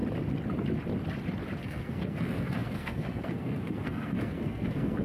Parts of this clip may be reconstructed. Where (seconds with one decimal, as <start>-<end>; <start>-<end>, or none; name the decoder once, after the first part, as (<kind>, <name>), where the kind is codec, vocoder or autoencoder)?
1.6-5.0 (codec, SNAC)